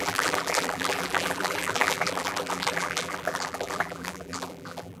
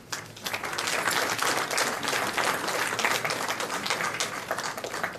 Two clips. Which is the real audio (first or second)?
second